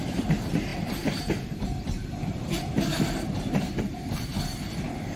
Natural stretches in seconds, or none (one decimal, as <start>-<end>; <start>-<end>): 4.3-5.2